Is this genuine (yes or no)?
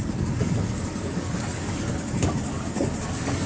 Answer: no